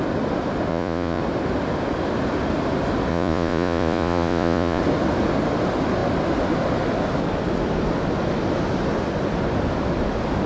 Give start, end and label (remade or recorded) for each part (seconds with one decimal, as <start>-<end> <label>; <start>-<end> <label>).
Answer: 0.0-0.7 recorded; 0.7-1.2 remade; 1.2-3.1 recorded; 3.1-4.8 remade; 4.8-10.5 recorded